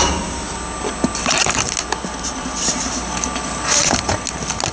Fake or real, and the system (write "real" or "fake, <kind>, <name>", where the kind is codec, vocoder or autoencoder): real